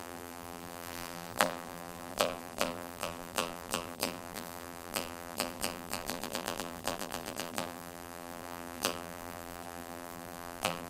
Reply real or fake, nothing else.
fake